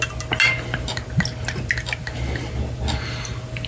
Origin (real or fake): real